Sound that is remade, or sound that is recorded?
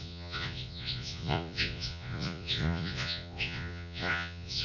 remade